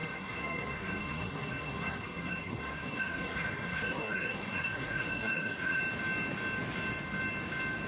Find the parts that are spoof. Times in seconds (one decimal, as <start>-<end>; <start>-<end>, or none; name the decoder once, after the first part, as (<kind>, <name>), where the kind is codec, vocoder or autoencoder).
0.0-5.8 (codec, SNAC)